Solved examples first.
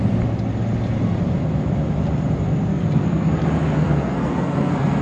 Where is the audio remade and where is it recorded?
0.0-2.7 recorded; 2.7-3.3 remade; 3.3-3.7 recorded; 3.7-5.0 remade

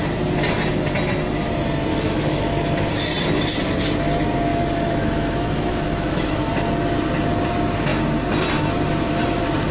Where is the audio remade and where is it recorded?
0.0-1.9 recorded; 1.9-2.9 remade; 2.9-4.5 recorded; 4.5-6.5 remade; 6.5-9.7 recorded

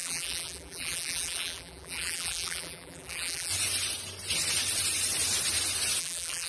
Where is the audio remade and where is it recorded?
0.0-3.5 remade; 3.5-6.0 recorded; 6.0-6.5 remade

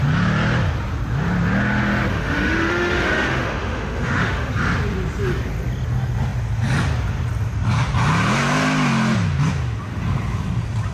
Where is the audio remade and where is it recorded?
0.0-2.1 recorded; 2.1-4.5 remade; 4.5-10.9 recorded